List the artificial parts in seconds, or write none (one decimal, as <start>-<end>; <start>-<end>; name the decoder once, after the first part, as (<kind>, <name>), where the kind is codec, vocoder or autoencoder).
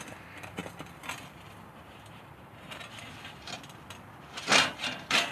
0.0-5.3 (vocoder, BigVGAN v2)